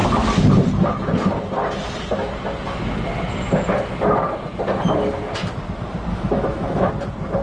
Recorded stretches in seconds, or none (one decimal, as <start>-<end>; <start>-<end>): 0.0-6.1; 6.9-7.4